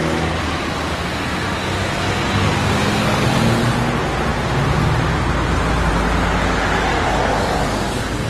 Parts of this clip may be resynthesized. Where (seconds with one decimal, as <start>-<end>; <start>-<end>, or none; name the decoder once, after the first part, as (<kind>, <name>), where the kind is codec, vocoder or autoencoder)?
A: 2.4-3.3 (codec, DAC); 6.9-8.3